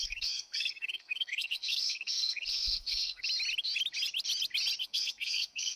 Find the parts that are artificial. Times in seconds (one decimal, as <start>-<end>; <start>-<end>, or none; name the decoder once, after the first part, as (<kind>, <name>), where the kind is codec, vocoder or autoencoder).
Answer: 0.0-3.2 (codec, SNAC); 4.8-5.8